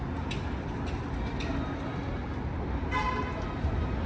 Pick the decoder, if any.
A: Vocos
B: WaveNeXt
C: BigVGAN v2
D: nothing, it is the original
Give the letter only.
D